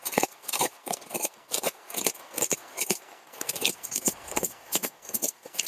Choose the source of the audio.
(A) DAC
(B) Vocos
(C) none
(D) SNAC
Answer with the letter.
D